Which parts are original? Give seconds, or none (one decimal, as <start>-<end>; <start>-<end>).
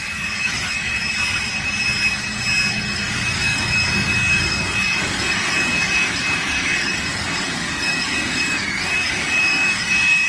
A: 0.9-2.7